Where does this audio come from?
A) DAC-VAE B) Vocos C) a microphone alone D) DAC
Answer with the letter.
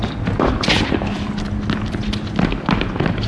C